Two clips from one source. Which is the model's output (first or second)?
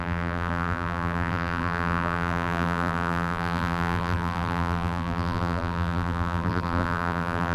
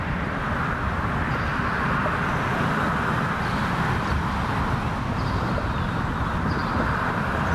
first